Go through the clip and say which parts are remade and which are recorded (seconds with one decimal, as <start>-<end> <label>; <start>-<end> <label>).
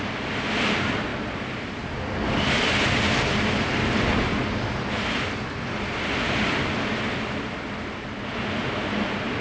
0.0-9.4 recorded